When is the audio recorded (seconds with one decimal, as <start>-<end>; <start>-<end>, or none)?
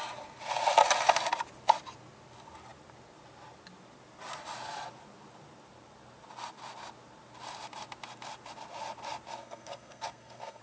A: 0.0-9.3